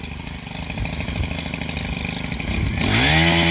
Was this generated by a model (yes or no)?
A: no